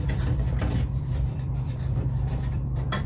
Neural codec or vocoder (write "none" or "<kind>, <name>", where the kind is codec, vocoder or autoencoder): vocoder, BigVGAN v2